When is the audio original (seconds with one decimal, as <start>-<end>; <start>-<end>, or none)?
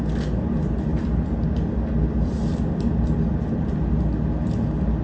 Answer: 0.0-0.9; 3.9-5.0